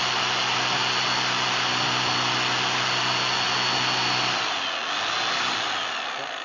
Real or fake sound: real